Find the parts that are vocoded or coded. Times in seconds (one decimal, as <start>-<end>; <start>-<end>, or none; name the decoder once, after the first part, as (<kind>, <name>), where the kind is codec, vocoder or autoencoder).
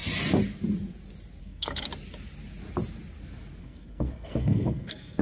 1.4-1.9 (codec, SNAC); 3.6-5.2